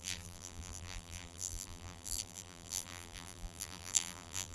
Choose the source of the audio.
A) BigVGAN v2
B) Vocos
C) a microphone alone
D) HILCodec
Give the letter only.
A